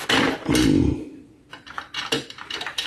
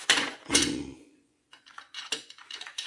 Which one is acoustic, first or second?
first